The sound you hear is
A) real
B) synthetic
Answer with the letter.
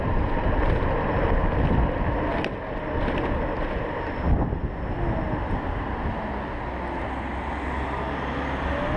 A